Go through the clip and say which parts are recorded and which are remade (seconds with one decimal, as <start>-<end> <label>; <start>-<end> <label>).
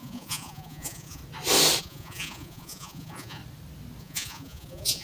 0.0-1.2 remade; 1.2-1.8 recorded; 1.8-3.4 remade; 3.4-4.0 recorded; 4.0-5.0 remade